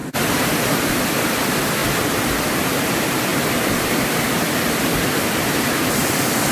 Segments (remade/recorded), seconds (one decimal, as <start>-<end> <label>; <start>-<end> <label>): 0.0-1.8 remade; 1.8-2.7 recorded; 2.7-3.3 remade; 3.3-5.5 recorded; 5.5-6.5 remade